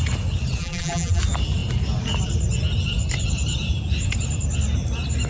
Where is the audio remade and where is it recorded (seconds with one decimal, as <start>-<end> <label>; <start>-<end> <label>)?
0.0-0.6 recorded; 0.6-1.2 remade; 1.2-5.3 recorded

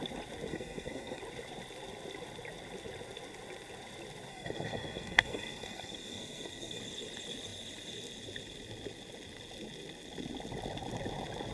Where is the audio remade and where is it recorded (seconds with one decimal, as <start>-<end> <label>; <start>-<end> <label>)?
0.0-0.5 recorded; 0.5-1.2 remade; 1.2-4.3 recorded; 4.3-6.8 remade; 6.8-11.5 recorded

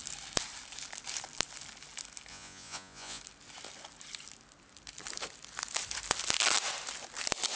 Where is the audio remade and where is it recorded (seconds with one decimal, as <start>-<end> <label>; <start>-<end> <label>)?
0.0-2.3 recorded; 2.3-3.2 remade; 3.2-7.6 recorded

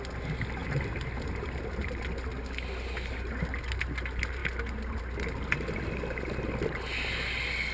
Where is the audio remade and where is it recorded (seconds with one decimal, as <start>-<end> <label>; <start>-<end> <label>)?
0.0-7.7 recorded

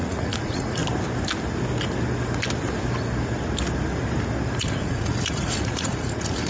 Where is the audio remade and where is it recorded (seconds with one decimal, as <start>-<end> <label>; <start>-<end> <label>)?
0.0-0.8 remade; 0.8-4.6 recorded; 4.6-6.5 remade